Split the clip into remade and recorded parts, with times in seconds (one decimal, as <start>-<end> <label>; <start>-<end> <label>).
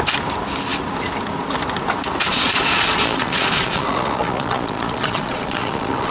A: 0.0-2.3 recorded; 2.3-6.1 remade